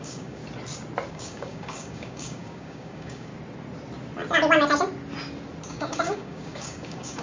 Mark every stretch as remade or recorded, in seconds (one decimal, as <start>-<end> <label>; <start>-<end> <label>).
0.0-0.4 remade; 0.4-1.1 recorded; 1.1-3.3 remade; 3.3-5.7 recorded; 5.7-7.2 remade